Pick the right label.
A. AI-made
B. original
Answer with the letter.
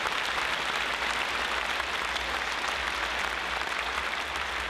B